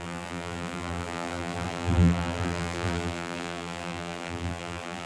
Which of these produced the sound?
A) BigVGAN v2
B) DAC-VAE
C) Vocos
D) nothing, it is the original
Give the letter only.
A